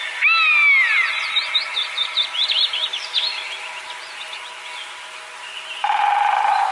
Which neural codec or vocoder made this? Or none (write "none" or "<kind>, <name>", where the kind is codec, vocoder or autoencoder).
none